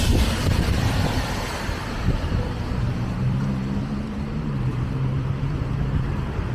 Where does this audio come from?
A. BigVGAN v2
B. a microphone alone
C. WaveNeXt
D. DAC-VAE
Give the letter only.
A